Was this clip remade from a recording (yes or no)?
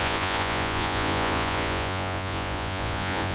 yes